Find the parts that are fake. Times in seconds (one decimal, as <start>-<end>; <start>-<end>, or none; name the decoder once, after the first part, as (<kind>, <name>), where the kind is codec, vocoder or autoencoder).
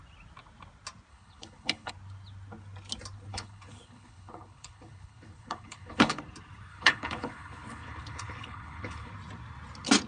1.1-1.9 (codec, HILCodec); 3.3-6.2; 6.7-9.1